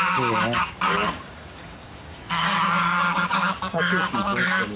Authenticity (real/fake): fake